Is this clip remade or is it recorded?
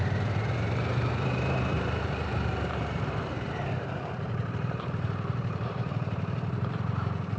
remade